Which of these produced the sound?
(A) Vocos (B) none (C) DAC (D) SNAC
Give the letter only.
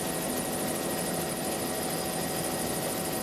B